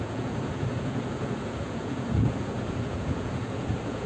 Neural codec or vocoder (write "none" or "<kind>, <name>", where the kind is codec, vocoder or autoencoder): vocoder, Vocos